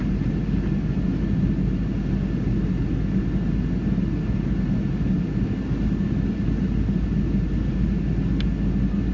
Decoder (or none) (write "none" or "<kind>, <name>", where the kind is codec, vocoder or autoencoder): none